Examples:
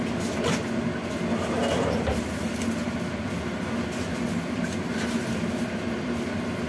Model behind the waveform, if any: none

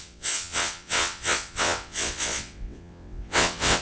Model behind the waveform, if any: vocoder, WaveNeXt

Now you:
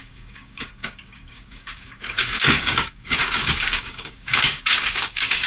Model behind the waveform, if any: codec, DAC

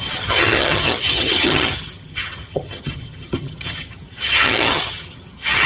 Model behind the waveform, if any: vocoder, HiFi-GAN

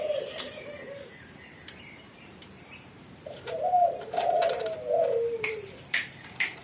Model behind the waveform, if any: vocoder, BigVGAN v2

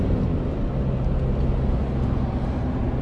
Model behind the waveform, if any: none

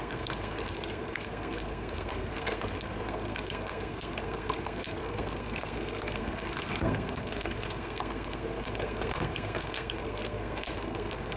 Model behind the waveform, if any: codec, SNAC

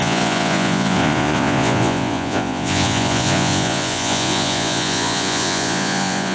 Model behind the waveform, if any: vocoder, Vocos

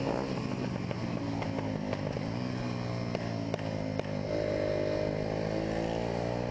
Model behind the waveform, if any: none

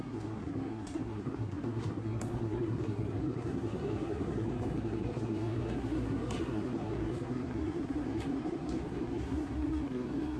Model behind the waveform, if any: codec, SNAC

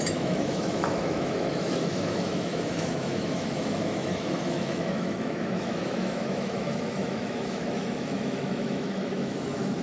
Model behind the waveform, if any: autoencoder, DAC-VAE